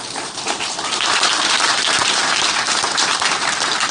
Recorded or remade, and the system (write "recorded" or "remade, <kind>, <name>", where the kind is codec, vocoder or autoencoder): remade, vocoder, BigVGAN v2